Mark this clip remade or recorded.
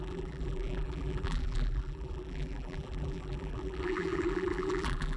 remade